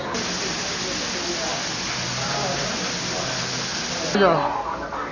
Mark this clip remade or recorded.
recorded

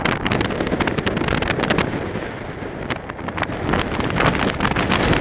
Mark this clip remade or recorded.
recorded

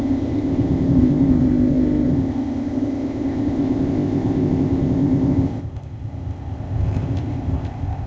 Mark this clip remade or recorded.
remade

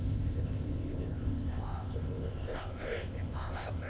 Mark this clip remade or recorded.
remade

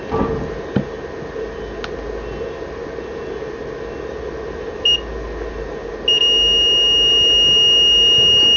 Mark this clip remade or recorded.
recorded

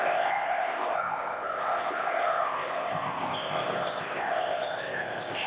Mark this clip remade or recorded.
remade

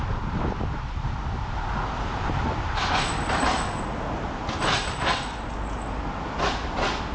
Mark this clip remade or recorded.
recorded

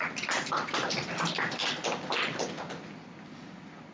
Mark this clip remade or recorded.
recorded